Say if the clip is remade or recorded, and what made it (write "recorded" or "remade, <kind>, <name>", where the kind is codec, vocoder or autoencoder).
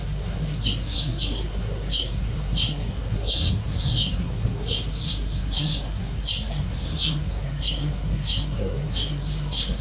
remade, codec, SNAC